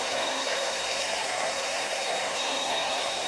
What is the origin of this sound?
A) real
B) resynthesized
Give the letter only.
B